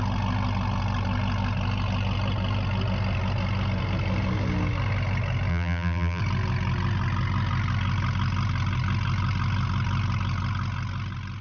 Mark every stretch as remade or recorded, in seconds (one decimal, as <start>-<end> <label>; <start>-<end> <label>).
0.0-5.5 recorded; 5.5-6.2 remade; 6.2-11.4 recorded